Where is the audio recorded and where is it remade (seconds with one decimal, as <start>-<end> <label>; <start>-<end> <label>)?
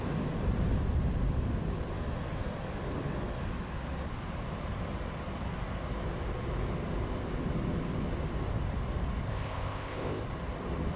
0.0-9.3 recorded; 9.3-10.2 remade; 10.2-11.0 recorded